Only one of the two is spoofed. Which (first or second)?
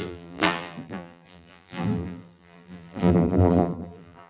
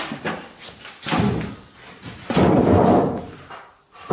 first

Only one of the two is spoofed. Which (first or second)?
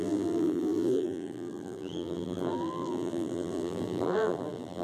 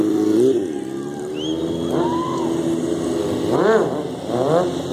first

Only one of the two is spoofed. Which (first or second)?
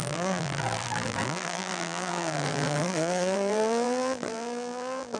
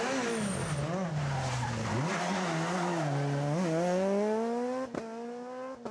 first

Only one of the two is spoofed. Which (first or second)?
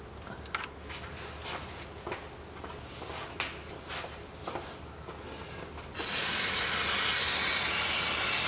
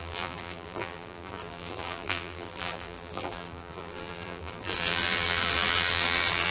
second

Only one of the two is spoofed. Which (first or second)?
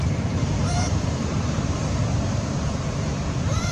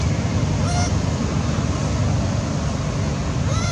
first